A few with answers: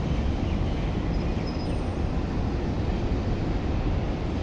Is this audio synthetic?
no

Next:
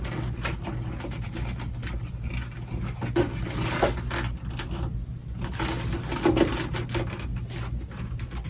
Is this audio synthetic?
no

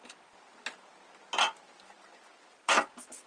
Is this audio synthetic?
no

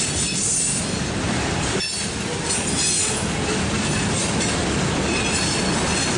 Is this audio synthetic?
no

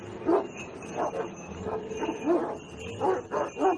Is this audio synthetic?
no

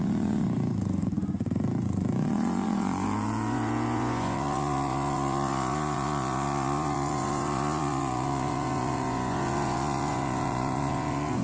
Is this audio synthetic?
yes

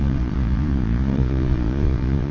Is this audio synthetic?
yes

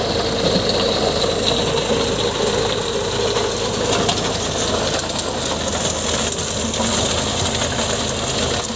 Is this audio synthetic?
no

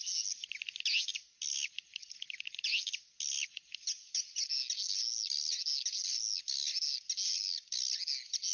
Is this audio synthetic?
no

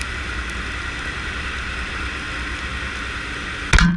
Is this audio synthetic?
no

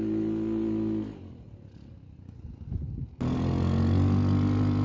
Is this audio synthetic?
no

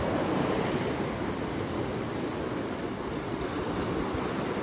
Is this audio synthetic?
no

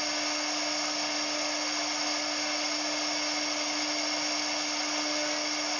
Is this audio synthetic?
no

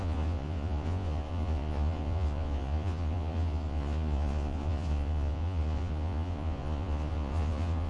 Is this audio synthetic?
yes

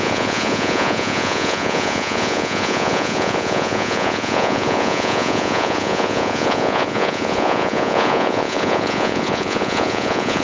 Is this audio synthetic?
yes